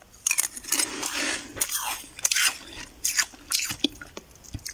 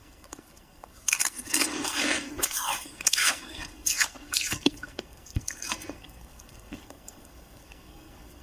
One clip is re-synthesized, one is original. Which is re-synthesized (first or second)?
second